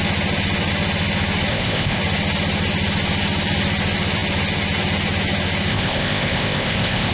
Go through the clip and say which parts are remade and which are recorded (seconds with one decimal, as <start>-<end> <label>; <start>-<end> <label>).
0.0-1.5 recorded; 1.5-2.0 remade; 2.0-5.7 recorded; 5.7-7.1 remade